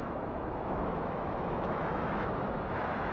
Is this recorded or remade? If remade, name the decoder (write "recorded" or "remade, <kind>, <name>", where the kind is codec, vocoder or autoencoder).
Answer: remade, autoencoder, DAC-VAE